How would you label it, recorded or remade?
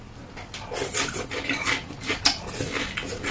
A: recorded